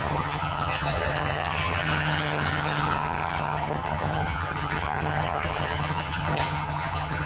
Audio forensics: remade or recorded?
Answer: remade